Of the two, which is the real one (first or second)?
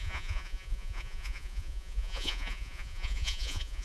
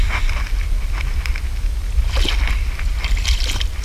second